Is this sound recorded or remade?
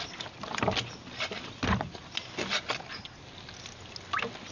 recorded